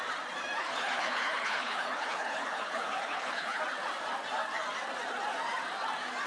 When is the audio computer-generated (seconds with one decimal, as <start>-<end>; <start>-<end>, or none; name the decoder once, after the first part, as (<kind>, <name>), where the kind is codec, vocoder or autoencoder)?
0.6-3.6 (codec, HILCodec)